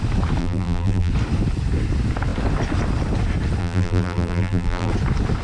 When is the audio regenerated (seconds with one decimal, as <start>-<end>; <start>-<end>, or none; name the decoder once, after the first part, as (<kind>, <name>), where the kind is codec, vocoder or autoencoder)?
0.4-1.1 (vocoder, BigVGAN v2); 3.6-4.9